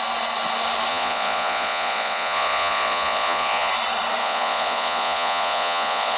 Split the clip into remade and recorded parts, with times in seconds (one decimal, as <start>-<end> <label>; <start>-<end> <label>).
0.0-0.9 recorded; 0.9-3.7 remade; 3.7-4.2 recorded; 4.2-6.2 remade